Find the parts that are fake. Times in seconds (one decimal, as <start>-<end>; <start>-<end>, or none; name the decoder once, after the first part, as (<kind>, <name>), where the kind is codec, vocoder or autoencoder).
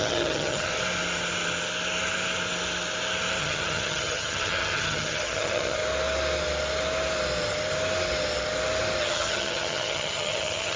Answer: 0.0-0.7 (vocoder, HiFi-GAN); 3.4-5.8; 9.0-10.8